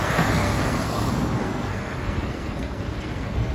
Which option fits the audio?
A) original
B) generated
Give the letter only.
B